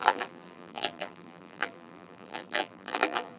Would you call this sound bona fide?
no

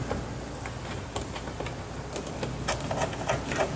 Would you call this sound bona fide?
yes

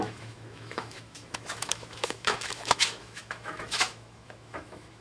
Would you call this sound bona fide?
no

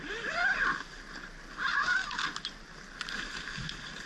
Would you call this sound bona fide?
yes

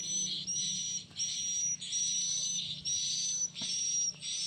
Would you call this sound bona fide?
yes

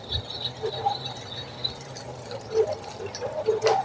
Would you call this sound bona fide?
yes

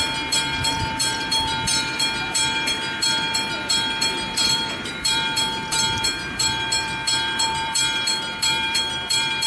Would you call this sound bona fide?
no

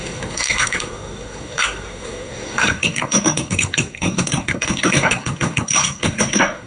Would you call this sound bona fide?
no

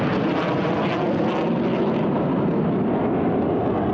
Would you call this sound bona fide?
yes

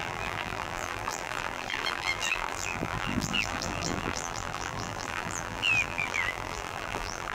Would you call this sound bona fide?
no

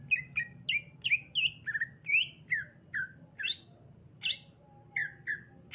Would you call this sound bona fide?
yes